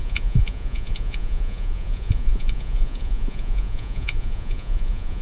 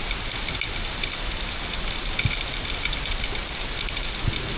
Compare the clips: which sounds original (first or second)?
second